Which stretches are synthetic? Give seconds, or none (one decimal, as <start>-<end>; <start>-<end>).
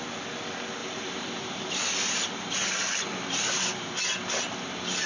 0.8-3.9